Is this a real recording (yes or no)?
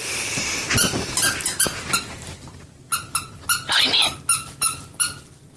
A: yes